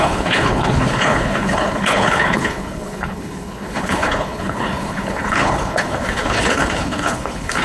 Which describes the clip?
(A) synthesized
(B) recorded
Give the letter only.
A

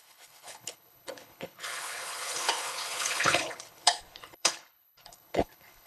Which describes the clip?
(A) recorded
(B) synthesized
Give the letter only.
B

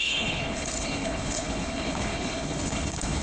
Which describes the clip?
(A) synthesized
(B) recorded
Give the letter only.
A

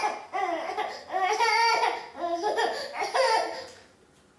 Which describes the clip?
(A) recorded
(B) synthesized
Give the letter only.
A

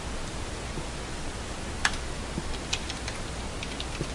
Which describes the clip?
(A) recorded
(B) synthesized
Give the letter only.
A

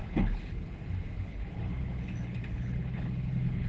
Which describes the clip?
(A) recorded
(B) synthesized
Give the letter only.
B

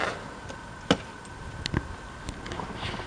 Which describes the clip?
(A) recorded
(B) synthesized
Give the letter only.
A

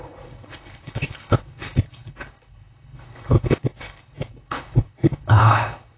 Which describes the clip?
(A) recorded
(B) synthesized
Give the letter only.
B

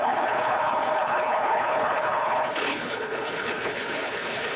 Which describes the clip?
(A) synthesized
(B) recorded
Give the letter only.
A